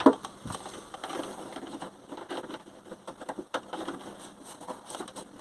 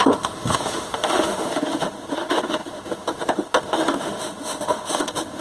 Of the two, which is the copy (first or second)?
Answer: second